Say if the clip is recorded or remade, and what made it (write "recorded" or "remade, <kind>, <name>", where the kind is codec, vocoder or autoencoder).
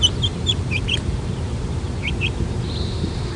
remade, vocoder, BigVGAN v2